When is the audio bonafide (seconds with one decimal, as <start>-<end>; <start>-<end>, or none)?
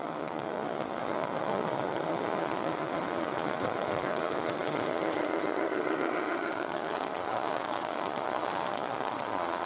none